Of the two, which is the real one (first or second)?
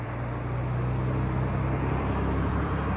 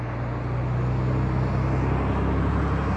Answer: second